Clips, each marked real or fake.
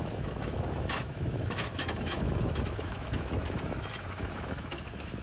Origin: fake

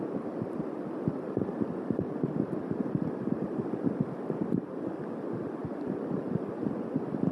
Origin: real